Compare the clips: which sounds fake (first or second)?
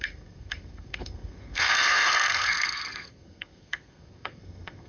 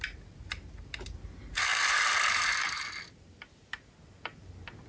first